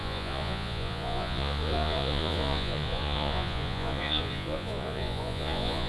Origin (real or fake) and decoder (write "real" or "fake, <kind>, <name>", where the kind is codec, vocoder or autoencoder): fake, vocoder, Vocos